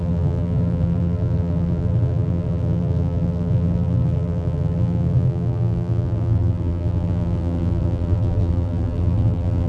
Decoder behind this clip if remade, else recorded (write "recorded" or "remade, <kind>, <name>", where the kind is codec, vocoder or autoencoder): remade, vocoder, BigVGAN v2